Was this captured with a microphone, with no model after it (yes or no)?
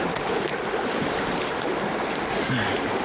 no